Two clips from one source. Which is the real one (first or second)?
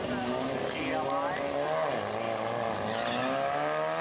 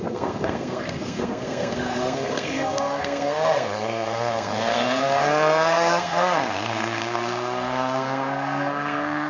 first